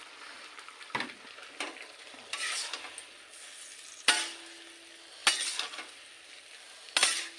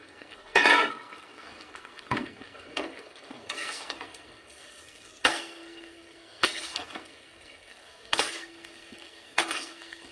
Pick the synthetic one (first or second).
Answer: second